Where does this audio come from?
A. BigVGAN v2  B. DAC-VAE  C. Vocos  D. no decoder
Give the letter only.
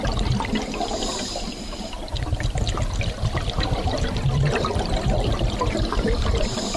D